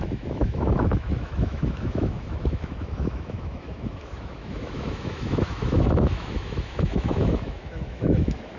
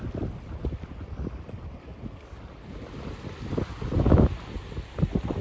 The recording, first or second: second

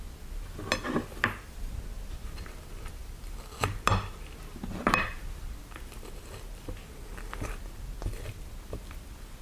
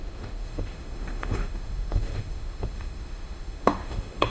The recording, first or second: first